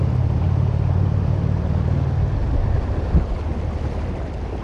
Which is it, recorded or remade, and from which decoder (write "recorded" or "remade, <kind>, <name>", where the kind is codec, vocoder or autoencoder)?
recorded